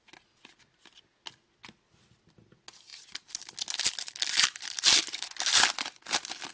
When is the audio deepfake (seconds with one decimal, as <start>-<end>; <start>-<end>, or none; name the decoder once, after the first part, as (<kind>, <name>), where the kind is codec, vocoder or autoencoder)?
none